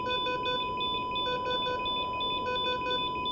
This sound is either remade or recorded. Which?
recorded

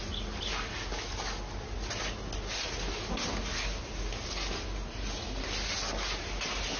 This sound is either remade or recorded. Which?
recorded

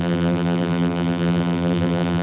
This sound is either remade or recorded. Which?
remade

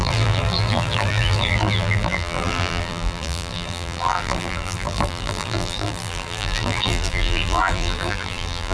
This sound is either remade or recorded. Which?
remade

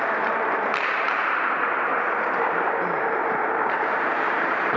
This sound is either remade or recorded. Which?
remade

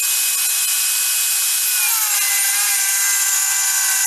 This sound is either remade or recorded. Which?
recorded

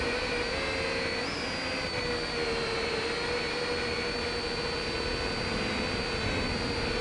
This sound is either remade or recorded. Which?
recorded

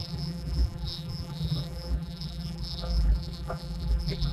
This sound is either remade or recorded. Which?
remade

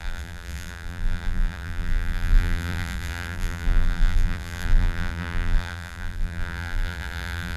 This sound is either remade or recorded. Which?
remade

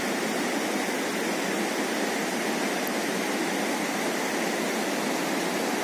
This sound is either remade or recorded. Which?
recorded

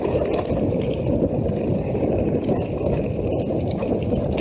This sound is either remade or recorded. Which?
recorded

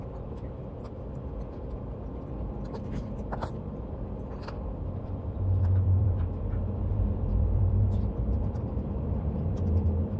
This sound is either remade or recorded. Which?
remade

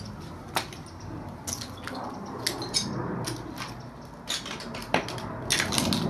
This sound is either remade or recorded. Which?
recorded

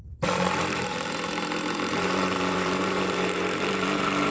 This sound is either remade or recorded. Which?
remade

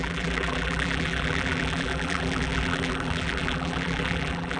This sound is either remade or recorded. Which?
remade